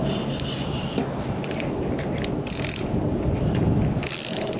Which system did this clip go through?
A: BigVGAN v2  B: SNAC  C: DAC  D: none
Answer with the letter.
D